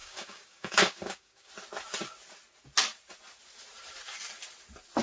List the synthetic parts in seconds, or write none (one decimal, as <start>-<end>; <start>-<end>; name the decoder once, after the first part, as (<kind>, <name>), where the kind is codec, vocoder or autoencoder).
0.0-1.5 (codec, DAC)